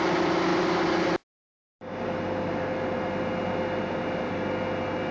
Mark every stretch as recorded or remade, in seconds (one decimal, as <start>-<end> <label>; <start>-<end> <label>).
0.0-5.1 recorded